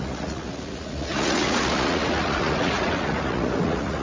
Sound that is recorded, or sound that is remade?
remade